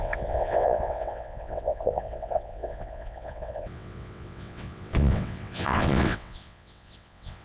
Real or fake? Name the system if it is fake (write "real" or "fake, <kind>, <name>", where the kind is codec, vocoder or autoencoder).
fake, vocoder, WaveNeXt